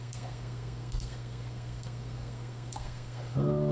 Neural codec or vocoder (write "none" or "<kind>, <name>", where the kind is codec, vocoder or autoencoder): codec, SNAC